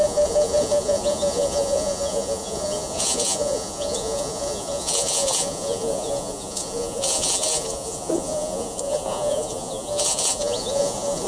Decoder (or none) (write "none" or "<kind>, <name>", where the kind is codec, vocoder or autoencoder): vocoder, Vocos